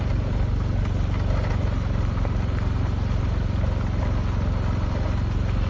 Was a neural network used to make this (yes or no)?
no